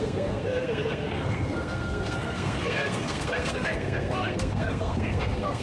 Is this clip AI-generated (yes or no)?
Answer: yes